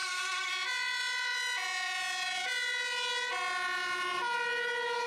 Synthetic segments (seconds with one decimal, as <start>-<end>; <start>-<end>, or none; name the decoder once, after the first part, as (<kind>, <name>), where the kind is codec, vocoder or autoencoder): 0.0-0.5 (codec, SNAC)